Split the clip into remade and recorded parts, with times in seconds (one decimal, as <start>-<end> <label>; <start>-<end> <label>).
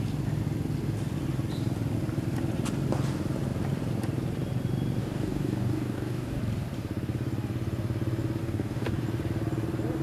0.0-5.0 recorded; 5.0-6.4 remade; 6.4-8.4 recorded; 8.4-9.0 remade; 9.0-10.0 recorded